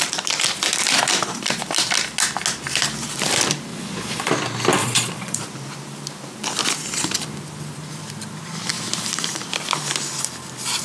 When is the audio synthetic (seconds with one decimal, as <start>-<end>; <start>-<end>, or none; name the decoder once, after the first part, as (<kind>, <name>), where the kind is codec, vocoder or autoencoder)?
3.7-4.3 (vocoder, Vocos); 4.8-5.5